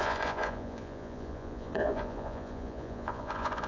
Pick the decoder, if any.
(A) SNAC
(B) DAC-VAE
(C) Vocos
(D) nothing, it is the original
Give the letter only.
C